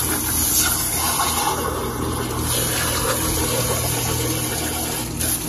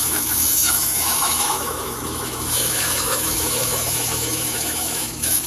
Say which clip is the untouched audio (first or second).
first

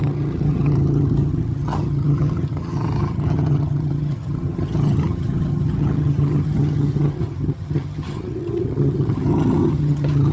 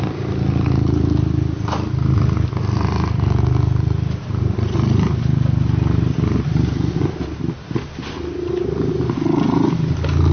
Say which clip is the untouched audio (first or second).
second